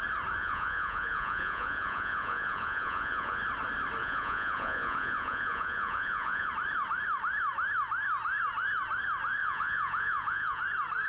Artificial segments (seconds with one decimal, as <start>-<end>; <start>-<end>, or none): 0.4-3.4; 4.0-6.5; 9.4-10.6